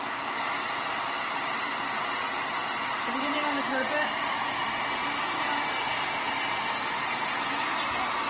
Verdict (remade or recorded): recorded